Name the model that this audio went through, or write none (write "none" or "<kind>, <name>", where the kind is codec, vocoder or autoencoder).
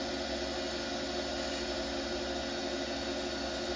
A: none